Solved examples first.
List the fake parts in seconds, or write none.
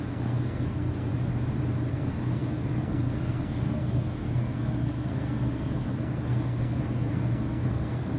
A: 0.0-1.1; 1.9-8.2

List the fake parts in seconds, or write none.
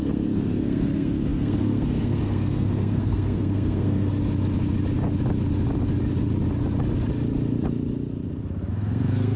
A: 0.0-4.1; 8.7-9.4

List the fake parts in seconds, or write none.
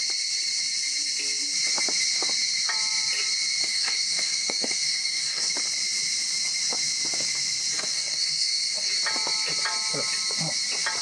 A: 3.6-5.5; 7.7-8.9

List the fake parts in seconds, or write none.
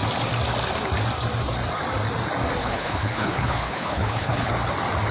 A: 2.6-4.5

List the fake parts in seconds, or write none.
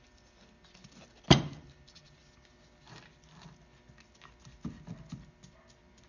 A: 0.0-2.2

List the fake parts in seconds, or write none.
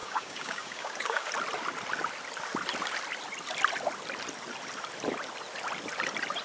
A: 0.0-1.3